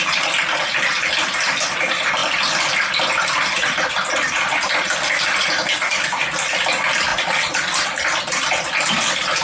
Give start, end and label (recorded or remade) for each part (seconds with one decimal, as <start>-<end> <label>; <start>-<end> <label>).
0.0-9.4 recorded